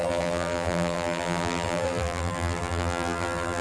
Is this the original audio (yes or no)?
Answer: no